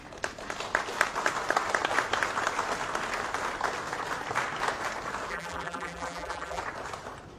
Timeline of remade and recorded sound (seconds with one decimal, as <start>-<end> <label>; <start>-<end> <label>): 0.0-5.3 recorded; 5.3-6.6 remade; 6.6-7.4 recorded